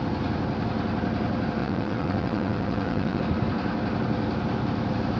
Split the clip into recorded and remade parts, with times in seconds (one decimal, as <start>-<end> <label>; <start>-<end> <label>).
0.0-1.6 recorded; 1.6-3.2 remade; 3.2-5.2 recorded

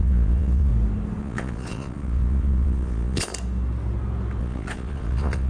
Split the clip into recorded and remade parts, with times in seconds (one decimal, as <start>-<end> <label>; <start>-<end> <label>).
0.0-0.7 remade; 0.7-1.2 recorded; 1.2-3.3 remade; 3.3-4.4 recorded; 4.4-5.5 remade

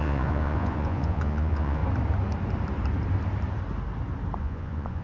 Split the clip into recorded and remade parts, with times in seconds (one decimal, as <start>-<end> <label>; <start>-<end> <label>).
0.0-1.8 remade; 1.8-4.4 recorded; 4.4-5.0 remade